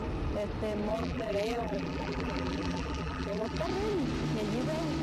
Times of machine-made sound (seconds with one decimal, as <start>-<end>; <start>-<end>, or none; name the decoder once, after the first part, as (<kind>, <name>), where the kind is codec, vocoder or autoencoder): 0.9-3.7 (vocoder, BigVGAN v2)